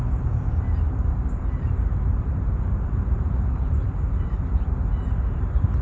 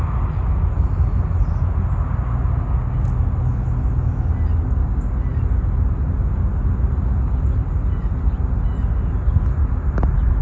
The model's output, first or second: first